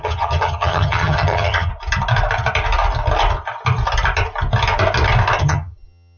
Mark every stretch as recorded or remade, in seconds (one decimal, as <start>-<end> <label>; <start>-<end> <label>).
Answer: 0.0-1.7 remade; 1.7-5.4 recorded; 5.4-6.2 remade